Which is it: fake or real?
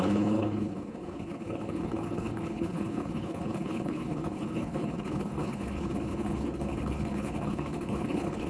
fake